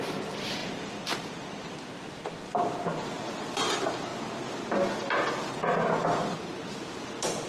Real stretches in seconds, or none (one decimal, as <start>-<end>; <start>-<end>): 0.0-7.5